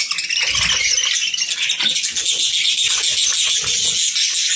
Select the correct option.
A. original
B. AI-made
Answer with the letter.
A